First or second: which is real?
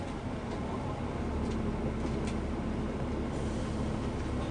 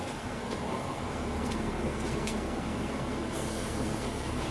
first